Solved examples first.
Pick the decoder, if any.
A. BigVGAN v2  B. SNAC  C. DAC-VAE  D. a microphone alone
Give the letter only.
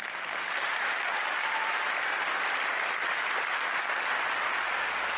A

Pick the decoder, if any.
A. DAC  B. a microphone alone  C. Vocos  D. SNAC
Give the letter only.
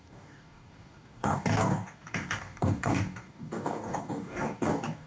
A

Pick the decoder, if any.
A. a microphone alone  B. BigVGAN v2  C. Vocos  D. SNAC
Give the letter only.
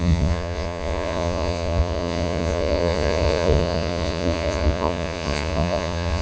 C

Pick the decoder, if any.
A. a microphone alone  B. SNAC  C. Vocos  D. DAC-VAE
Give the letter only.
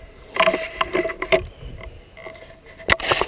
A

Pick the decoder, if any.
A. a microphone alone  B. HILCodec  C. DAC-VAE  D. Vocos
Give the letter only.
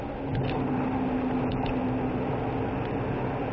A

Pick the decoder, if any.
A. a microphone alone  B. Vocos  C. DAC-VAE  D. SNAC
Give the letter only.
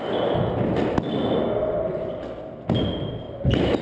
A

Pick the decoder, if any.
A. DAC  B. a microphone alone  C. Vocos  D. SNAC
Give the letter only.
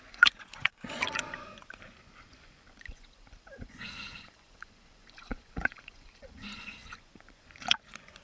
C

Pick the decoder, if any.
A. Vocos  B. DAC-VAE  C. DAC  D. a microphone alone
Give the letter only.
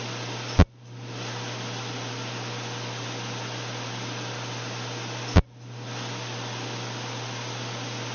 D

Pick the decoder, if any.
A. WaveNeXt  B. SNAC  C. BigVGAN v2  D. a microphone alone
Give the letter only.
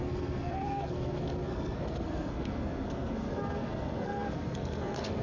B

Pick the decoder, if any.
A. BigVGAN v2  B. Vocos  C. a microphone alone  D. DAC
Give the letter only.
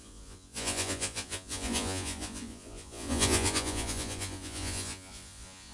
B